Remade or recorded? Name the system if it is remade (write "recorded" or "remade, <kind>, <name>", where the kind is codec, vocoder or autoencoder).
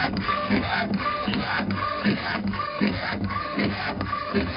remade, codec, SNAC